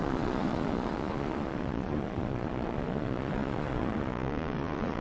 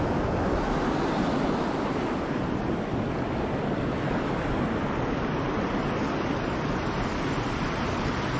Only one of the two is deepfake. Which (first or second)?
first